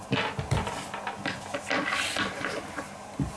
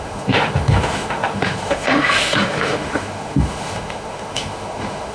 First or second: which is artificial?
second